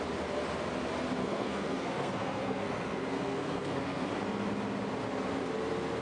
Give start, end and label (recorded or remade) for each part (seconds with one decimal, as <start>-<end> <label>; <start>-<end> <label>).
0.0-1.2 recorded; 1.2-4.1 remade; 4.1-6.0 recorded